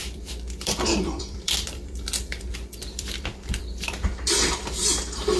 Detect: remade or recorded remade